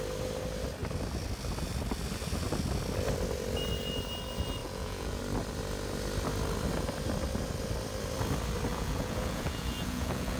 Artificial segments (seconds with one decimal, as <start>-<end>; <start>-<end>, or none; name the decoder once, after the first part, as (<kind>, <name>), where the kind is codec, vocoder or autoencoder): 4.6-5.2 (vocoder, Vocos); 8.7-10.4